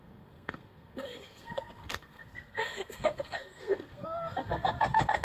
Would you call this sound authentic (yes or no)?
no